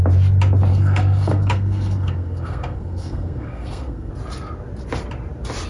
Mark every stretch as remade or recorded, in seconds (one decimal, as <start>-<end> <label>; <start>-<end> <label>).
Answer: 0.0-0.7 recorded; 0.7-4.1 remade; 4.1-5.7 recorded

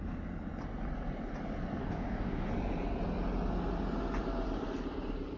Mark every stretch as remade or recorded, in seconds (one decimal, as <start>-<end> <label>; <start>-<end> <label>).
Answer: 0.0-1.8 recorded; 1.8-2.5 remade; 2.5-5.4 recorded

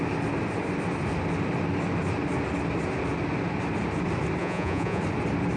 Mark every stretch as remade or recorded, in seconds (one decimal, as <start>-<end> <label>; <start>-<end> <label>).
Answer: 0.0-4.4 recorded; 4.4-5.0 remade; 5.0-5.6 recorded

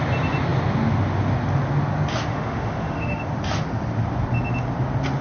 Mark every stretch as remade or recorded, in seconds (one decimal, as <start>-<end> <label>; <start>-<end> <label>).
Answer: 0.0-2.3 recorded; 2.3-3.2 remade; 3.2-5.2 recorded